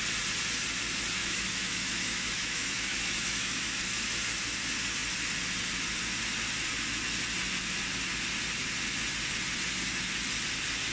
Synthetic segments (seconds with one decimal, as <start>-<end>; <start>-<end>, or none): 1.2-3.8